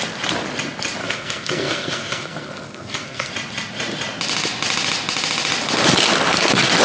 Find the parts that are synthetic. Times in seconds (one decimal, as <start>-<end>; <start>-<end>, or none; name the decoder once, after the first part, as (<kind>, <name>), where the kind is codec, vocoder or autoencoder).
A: 1.0-3.3 (codec, SNAC)